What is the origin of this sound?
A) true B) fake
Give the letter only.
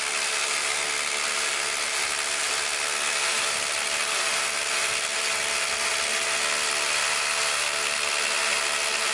A